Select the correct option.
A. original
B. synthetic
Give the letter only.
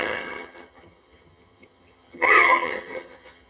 B